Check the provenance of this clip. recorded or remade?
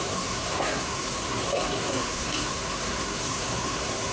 remade